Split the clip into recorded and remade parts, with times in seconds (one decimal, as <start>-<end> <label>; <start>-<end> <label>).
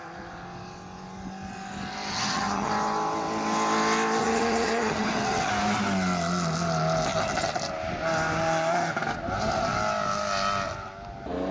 0.0-2.1 recorded; 2.1-2.7 remade; 2.7-4.2 recorded; 4.2-5.5 remade; 5.5-11.5 recorded